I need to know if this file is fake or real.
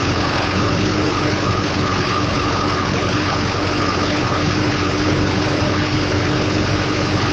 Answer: fake